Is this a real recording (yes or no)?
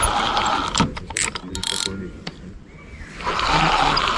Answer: yes